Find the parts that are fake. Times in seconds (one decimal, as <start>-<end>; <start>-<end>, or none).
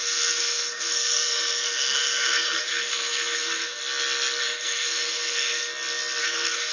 0.0-3.8; 4.4-5.7; 6.2-6.7